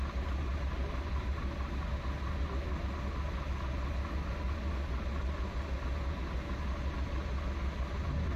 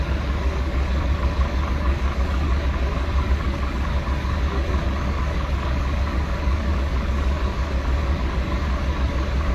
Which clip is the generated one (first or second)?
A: second